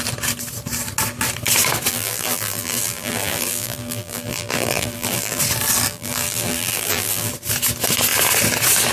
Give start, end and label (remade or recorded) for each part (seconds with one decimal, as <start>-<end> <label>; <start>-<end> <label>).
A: 0.0-1.9 recorded; 1.9-5.4 remade; 5.4-5.9 recorded; 5.9-7.3 remade; 7.3-8.9 recorded